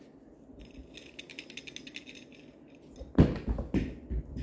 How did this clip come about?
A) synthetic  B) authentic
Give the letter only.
B